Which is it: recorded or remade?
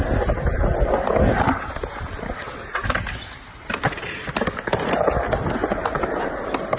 recorded